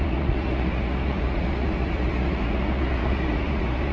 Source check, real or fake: fake